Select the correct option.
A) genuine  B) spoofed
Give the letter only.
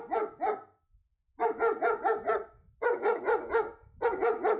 A